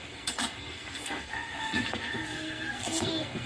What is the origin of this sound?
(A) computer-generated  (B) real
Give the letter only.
A